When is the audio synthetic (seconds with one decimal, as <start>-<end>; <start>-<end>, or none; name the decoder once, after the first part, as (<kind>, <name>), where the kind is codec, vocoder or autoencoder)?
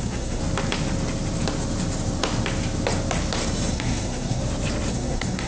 0.0-0.4 (codec, SNAC); 3.7-4.4; 4.9-5.5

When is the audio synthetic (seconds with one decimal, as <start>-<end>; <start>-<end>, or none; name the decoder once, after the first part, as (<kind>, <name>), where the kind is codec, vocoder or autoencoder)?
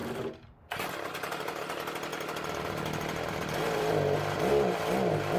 none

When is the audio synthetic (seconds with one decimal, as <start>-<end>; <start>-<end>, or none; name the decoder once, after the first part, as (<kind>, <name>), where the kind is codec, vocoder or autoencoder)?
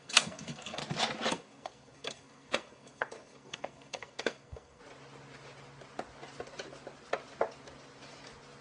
0.0-0.8 (codec, SNAC); 1.3-4.8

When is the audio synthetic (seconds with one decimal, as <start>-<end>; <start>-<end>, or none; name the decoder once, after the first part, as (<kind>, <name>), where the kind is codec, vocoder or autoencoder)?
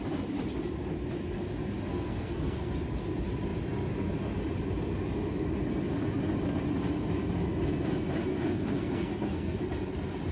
1.9-2.7 (codec, SNAC); 8.3-9.6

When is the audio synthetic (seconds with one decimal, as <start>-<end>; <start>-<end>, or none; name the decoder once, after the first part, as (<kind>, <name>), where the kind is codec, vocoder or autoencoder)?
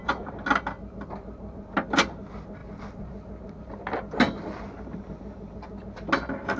none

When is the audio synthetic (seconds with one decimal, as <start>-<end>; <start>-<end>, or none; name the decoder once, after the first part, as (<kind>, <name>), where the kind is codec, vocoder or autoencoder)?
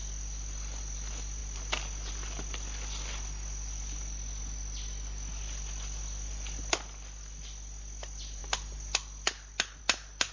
none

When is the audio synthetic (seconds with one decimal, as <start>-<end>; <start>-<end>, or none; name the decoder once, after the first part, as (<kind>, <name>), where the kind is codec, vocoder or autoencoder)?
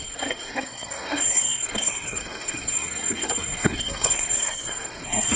0.0-5.4 (codec, SNAC)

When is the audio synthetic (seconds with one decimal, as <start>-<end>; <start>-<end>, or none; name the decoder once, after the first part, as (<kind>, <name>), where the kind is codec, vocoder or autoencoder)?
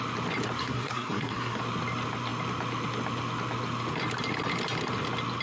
0.6-1.6 (codec, SNAC)